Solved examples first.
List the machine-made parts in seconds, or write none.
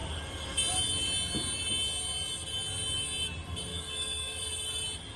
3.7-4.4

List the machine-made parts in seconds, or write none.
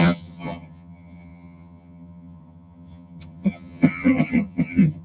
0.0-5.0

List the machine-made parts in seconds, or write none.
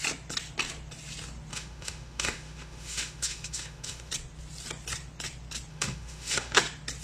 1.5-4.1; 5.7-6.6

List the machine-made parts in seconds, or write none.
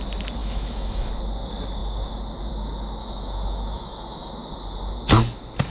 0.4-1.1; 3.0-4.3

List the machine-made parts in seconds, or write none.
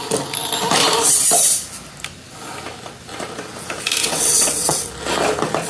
4.0-4.9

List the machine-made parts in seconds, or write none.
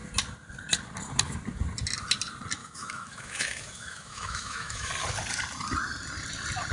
2.6-4.9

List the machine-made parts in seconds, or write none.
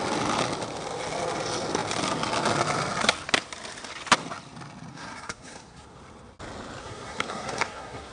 4.9-6.0; 6.8-8.1